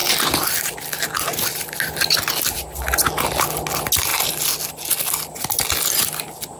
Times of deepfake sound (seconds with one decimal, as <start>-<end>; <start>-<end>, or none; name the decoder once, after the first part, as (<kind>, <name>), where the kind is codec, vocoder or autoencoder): none